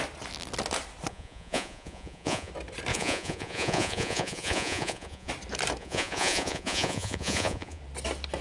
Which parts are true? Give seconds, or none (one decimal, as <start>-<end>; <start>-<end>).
0.0-1.1; 2.5-2.9; 5.3-5.8; 7.8-8.4